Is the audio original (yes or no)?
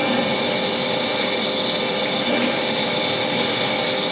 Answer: yes